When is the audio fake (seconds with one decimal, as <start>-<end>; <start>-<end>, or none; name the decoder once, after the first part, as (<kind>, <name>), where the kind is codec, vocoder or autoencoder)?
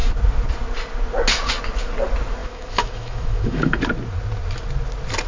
2.4-3.8 (autoencoder, DAC-VAE)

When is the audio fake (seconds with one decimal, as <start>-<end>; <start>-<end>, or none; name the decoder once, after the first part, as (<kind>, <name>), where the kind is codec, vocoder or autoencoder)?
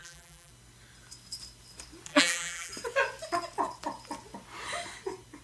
0.0-0.5 (vocoder, BigVGAN v2); 2.1-2.7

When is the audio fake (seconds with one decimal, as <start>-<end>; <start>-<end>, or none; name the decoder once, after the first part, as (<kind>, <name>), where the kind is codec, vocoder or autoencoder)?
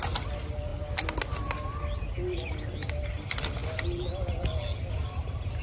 none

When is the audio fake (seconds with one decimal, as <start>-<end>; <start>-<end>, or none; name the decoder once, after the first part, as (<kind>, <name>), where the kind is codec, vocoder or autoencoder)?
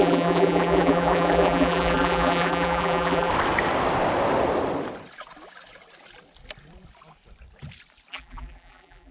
0.0-3.3 (vocoder, BigVGAN v2); 8.1-9.1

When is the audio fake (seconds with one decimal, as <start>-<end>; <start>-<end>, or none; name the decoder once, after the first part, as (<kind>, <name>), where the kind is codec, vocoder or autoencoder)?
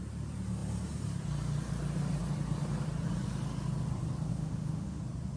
4.3-5.0 (autoencoder, DAC-VAE)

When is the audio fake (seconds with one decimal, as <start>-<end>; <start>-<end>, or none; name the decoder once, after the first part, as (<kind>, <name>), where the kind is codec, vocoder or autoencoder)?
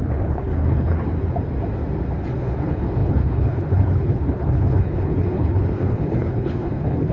0.0-1.1 (codec, HILCodec); 2.4-7.1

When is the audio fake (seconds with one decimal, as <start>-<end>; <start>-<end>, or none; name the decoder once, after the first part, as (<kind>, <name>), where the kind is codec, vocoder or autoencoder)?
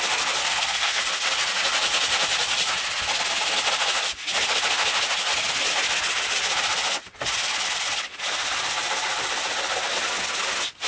0.4-1.0 (codec, SNAC)